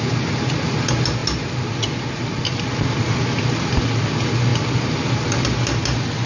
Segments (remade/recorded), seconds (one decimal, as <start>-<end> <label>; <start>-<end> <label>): 0.0-6.3 recorded